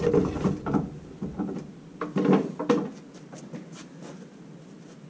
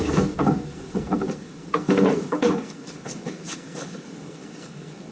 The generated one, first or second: second